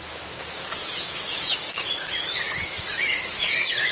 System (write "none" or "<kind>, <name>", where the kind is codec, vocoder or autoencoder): autoencoder, DAC-VAE